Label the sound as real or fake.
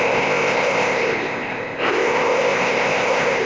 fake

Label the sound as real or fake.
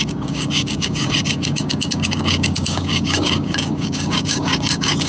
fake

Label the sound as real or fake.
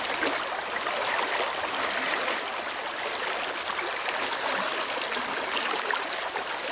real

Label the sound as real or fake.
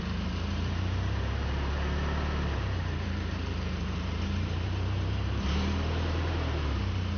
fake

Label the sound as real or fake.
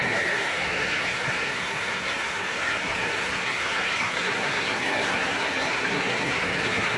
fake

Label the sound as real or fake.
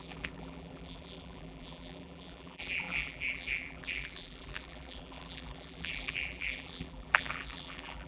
fake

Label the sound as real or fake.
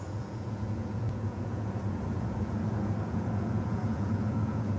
fake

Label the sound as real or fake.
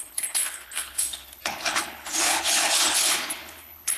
fake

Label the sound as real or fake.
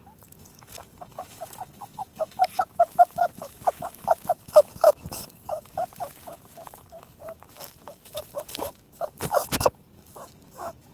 fake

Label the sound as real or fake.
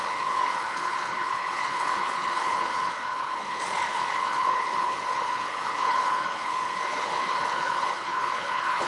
fake